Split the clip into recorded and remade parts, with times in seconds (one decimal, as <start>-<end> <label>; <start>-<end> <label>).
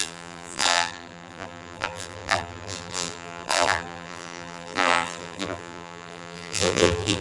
0.0-7.2 remade